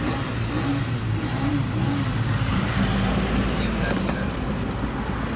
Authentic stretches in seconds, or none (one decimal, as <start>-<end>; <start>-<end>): 0.0-0.7; 1.5-2.5; 4.5-5.4